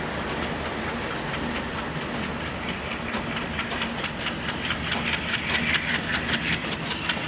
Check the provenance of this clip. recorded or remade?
recorded